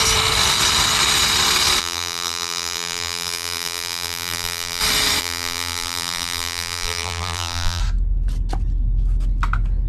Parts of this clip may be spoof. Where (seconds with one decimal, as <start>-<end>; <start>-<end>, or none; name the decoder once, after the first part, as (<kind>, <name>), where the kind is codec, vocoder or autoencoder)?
1.8-4.8 (vocoder, BigVGAN v2); 5.2-7.8